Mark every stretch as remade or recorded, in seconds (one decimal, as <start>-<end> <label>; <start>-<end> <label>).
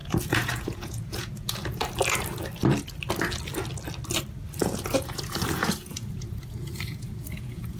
0.0-1.8 remade; 1.8-4.6 recorded; 4.6-7.8 remade